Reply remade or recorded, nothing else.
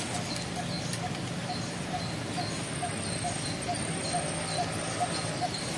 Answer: recorded